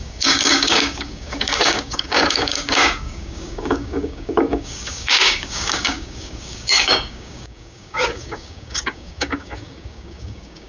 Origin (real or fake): fake